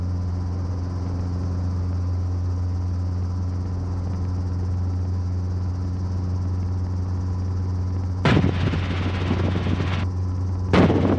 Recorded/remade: recorded